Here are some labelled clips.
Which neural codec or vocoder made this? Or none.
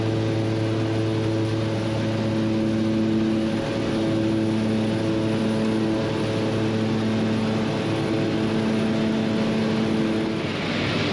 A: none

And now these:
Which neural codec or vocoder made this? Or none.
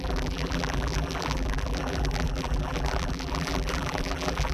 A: vocoder, BigVGAN v2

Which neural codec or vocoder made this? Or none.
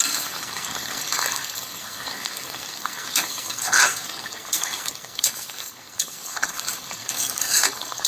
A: codec, SNAC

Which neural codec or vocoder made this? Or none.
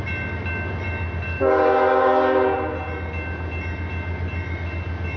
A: none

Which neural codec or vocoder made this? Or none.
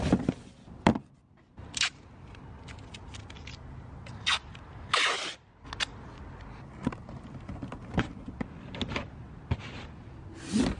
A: none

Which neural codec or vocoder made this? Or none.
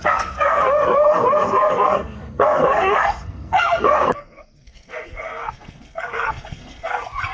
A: codec, SNAC